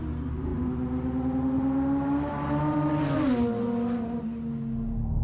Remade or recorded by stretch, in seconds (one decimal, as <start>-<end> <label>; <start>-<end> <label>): 0.0-5.2 recorded